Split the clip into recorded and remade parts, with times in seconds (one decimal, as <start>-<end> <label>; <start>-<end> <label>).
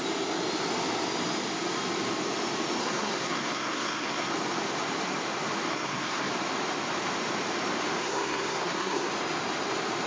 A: 0.0-2.8 recorded; 2.8-4.3 remade; 4.3-5.7 recorded; 5.7-6.3 remade; 6.3-8.0 recorded; 8.0-9.1 remade; 9.1-10.1 recorded